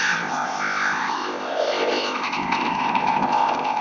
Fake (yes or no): yes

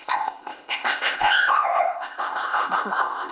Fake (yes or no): yes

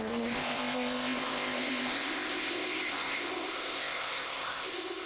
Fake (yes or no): yes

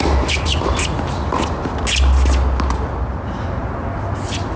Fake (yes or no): no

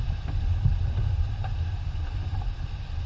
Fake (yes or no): no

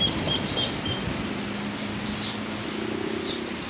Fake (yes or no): no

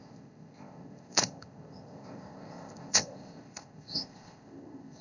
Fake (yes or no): yes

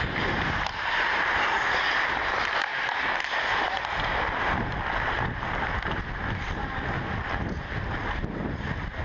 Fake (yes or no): no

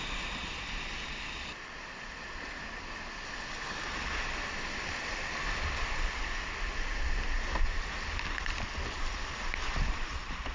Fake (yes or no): no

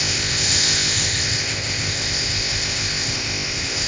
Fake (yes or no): yes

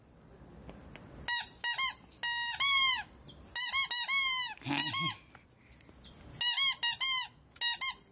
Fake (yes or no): no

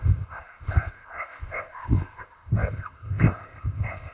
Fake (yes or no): yes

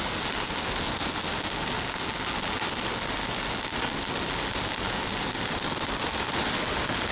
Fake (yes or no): no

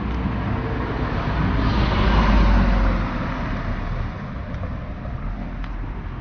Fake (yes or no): no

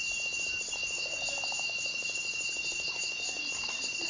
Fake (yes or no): no